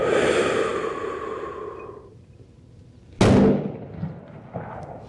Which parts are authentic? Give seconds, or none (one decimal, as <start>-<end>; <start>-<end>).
0.0-5.1